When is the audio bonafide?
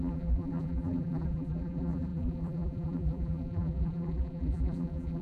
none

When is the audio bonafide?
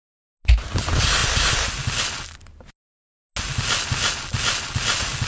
0.0-5.3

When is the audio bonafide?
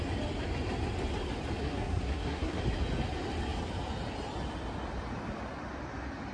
0.0-1.6; 2.6-6.3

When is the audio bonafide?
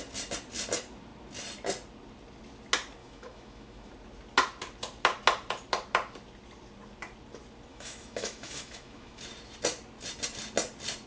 0.0-3.0; 3.9-7.7; 9.2-11.1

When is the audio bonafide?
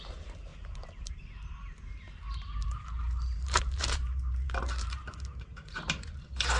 none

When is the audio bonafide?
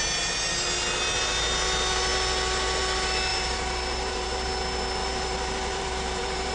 0.0-3.3; 4.5-5.0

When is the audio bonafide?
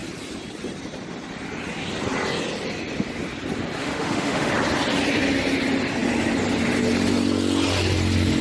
0.0-3.8; 4.5-8.4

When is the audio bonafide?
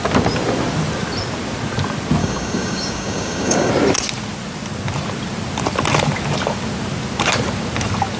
0.0-2.2; 3.7-8.2